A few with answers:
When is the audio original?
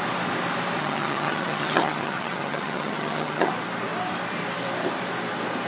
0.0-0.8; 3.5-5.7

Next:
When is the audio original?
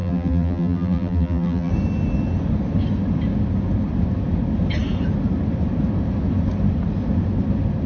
1.7-7.9